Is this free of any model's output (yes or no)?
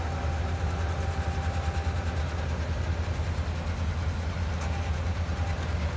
yes